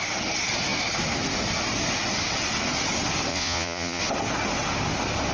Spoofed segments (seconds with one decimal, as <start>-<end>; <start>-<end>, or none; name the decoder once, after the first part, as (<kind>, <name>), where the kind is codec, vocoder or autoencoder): 3.3-4.0 (vocoder, Vocos)